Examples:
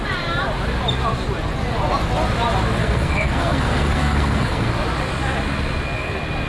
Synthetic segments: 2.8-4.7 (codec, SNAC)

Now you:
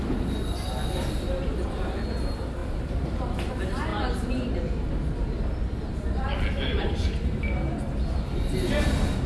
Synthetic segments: 2.6-3.5 (vocoder, BigVGAN v2)

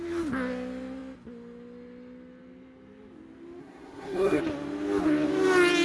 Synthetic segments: 3.6-4.4 (codec, SNAC)

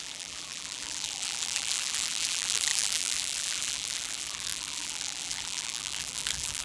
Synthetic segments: 0.0-6.6 (vocoder, BigVGAN v2)

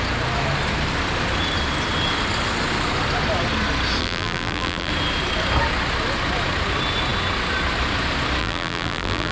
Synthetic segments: 4.0-4.9 (vocoder, BigVGAN v2); 8.4-9.3

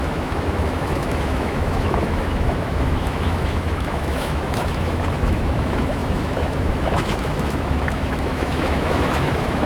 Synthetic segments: 0.0-9.7 (autoencoder, DAC-VAE)